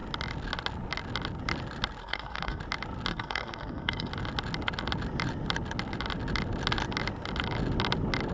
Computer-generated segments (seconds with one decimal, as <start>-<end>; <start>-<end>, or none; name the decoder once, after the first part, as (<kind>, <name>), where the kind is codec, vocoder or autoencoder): 2.0-2.6 (codec, SNAC); 3.1-4.1